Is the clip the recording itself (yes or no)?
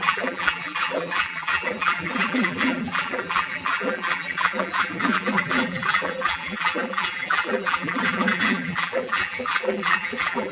no